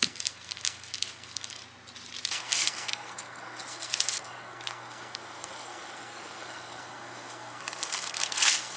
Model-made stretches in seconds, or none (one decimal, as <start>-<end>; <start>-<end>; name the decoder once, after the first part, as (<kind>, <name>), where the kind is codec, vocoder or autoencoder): 0.0-1.6 (codec, SNAC); 2.2-8.8